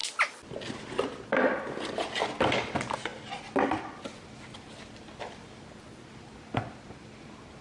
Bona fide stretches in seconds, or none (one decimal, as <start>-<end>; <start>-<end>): 0.0-7.6